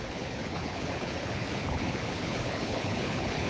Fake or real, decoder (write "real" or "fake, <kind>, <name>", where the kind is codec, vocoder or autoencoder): fake, codec, HILCodec